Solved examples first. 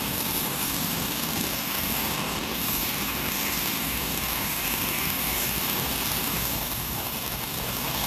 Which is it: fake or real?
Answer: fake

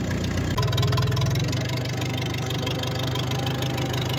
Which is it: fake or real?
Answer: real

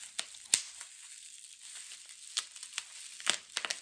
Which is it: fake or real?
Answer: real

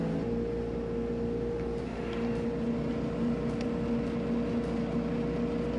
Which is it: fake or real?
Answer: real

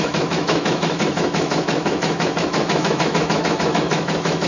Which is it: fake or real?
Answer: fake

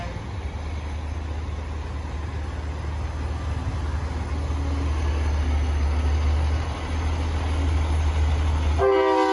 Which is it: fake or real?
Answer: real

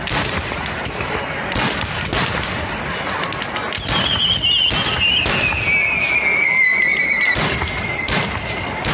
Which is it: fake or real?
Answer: real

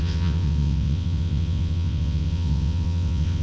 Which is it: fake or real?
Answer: fake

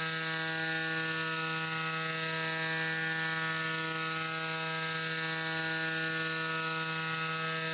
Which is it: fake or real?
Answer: real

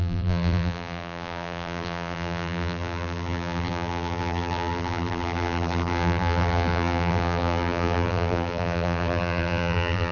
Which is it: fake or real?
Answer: fake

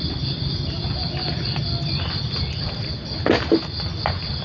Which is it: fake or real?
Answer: real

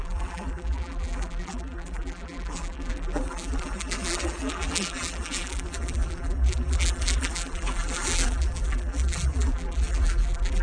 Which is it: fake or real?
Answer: fake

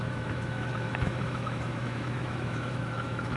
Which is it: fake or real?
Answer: fake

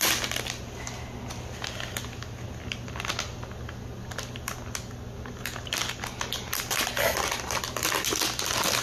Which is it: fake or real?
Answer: real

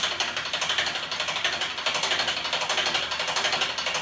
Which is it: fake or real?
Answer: real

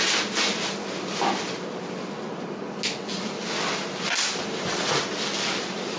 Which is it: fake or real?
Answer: real